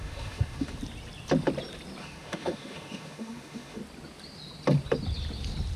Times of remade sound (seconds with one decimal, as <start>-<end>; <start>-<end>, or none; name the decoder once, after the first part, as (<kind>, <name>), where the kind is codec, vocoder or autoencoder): 0.0-0.8 (autoencoder, DAC-VAE); 2.0-3.8